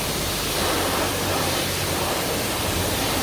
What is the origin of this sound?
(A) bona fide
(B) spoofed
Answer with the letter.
B